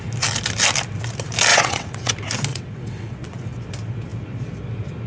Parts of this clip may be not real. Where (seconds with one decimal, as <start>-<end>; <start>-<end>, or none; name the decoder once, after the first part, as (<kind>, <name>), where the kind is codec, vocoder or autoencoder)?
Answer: 1.5-2.1 (vocoder, WaveNeXt); 2.5-3.4